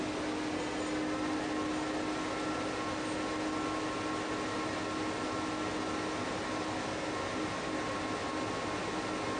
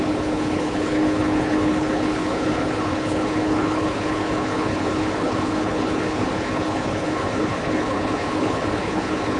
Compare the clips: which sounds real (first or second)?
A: first